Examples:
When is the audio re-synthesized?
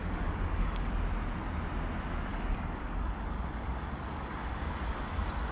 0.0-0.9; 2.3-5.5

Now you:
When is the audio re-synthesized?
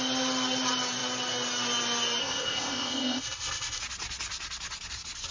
2.2-3.8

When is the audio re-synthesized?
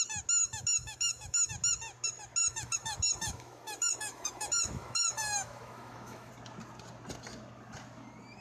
0.4-1.5; 2.4-6.3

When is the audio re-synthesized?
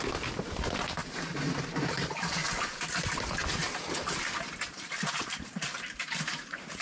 0.0-2.4; 3.0-3.4; 5.1-6.8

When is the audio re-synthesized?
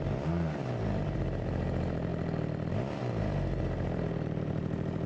0.0-2.1; 3.0-5.1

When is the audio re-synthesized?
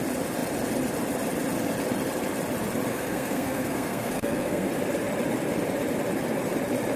2.9-4.7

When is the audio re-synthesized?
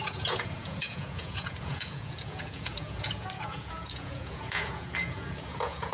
0.0-5.9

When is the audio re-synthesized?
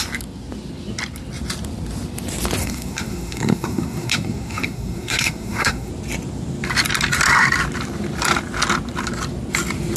2.6-5.9